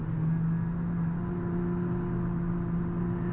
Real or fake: real